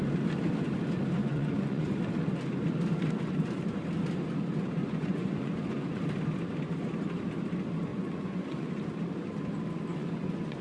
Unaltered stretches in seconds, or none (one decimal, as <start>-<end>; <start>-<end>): 0.0-1.2; 2.0-4.8; 6.0-7.9; 8.8-9.9